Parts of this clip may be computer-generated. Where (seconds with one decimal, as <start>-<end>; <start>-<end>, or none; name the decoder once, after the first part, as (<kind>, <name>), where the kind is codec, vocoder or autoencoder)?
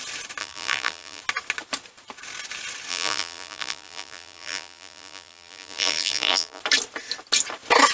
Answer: 0.4-1.2 (vocoder, BigVGAN v2); 2.9-6.6